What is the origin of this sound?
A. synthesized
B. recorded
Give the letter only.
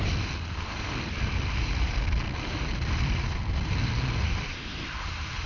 B